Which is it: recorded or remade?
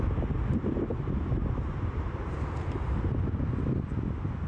recorded